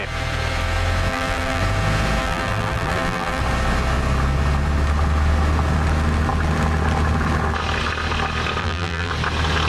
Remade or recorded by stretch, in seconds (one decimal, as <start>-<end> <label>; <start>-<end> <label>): 0.0-1.1 recorded; 1.1-1.6 remade; 1.6-2.2 recorded; 2.2-3.4 remade; 3.4-8.6 recorded; 8.6-9.1 remade; 9.1-9.7 recorded